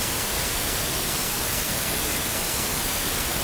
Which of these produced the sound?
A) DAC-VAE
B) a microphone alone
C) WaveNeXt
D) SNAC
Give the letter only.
D